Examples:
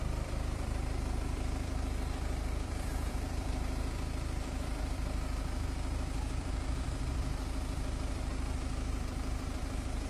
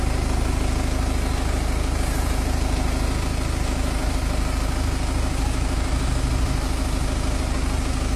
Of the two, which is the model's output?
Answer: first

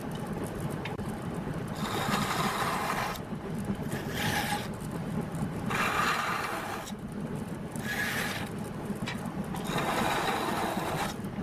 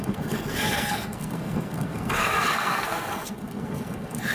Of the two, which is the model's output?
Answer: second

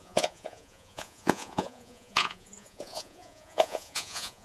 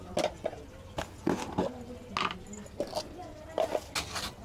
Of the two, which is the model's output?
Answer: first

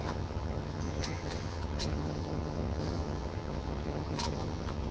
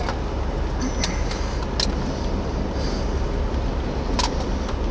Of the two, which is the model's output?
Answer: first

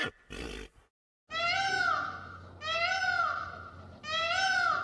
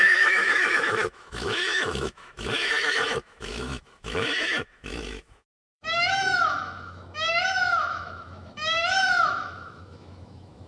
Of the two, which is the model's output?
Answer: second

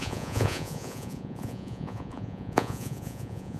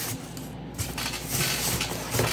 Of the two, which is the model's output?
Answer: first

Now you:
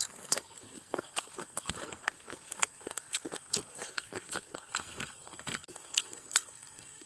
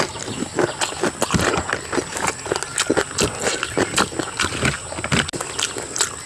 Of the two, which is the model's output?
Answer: first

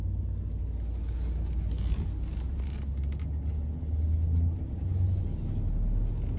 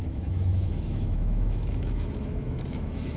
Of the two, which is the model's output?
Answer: second